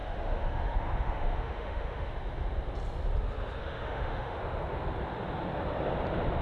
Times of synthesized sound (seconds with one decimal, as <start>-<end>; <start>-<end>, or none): 0.0-2.1; 3.6-4.4